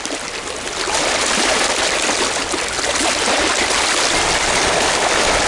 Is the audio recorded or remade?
recorded